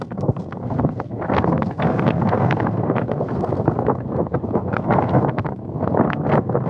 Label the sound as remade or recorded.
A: remade